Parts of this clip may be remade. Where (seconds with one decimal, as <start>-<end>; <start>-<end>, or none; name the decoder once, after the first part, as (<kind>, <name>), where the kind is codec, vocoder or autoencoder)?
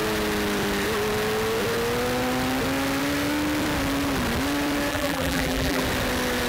4.9-5.8 (vocoder, BigVGAN v2)